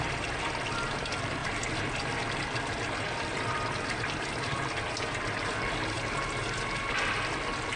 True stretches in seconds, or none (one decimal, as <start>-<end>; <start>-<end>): 0.0-7.8